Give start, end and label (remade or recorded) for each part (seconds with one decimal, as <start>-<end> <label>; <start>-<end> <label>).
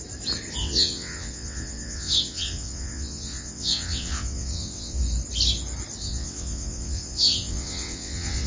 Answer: 0.0-0.6 recorded; 0.6-5.0 remade; 5.0-6.0 recorded; 6.0-8.5 remade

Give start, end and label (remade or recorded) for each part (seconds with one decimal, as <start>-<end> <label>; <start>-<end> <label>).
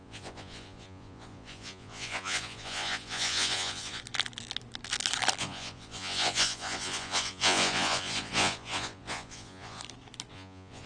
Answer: 0.0-4.0 remade; 4.0-5.4 recorded; 5.4-9.8 remade; 9.8-10.3 recorded; 10.3-10.9 remade